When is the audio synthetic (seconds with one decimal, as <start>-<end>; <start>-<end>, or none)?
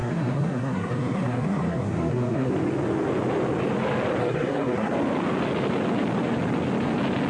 0.0-2.5; 4.2-4.9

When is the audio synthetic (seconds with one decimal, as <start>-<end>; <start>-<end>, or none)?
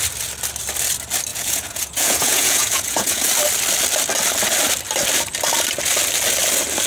1.3-3.3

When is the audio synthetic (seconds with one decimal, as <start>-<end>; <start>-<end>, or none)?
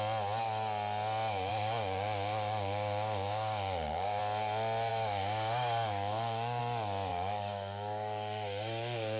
1.5-4.2; 4.9-6.6; 7.1-9.2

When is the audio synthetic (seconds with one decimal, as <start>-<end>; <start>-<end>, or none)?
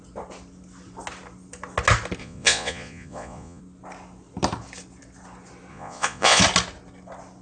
2.2-3.6; 5.7-6.4